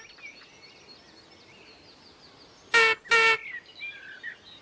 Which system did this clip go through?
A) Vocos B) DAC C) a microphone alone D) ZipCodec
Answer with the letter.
C